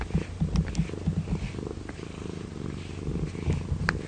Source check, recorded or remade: recorded